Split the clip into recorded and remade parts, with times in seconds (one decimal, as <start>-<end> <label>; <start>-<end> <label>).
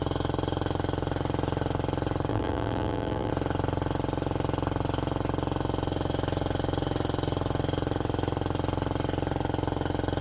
0.0-2.3 recorded; 2.3-3.3 remade; 3.3-10.2 recorded